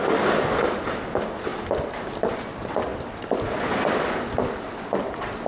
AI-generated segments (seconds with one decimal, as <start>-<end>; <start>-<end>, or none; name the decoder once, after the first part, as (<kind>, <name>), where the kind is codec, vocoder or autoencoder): none